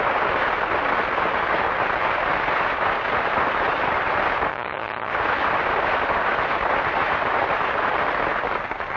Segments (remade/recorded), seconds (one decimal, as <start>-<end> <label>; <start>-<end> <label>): 0.0-4.5 recorded; 4.5-5.1 remade; 5.1-9.0 recorded